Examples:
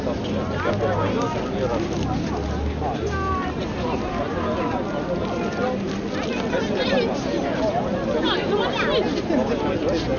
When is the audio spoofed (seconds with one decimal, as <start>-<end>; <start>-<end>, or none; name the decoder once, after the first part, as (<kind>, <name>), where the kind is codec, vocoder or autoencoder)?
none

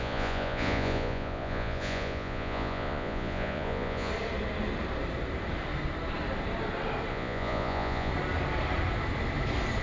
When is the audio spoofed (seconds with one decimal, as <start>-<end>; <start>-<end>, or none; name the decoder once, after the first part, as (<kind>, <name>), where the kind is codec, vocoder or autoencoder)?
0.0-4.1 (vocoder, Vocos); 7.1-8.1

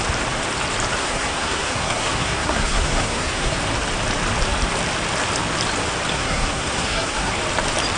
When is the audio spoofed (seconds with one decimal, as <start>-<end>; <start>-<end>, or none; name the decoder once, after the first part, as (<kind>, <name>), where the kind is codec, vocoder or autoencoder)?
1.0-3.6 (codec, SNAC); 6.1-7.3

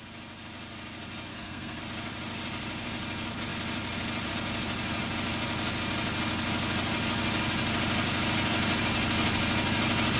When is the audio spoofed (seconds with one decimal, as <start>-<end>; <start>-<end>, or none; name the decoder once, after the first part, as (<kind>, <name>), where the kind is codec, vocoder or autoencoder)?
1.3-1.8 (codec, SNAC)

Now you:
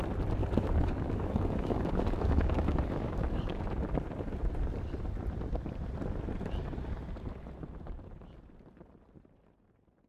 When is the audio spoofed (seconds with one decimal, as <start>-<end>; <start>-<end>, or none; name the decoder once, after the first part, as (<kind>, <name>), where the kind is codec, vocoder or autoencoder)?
0.4-3.6 (codec, DAC)